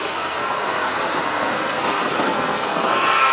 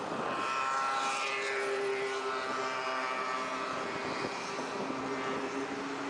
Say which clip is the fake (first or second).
first